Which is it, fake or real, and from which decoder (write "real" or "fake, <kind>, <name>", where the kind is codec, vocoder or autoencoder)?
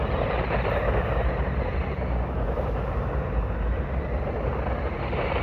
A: real